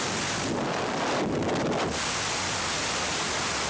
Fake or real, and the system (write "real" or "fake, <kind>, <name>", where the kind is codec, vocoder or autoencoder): real